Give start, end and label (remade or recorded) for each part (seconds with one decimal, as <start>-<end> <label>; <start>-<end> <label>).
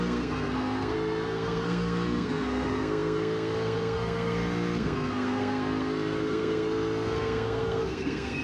0.0-8.4 remade